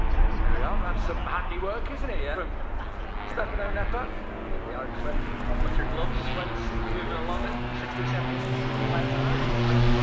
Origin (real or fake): real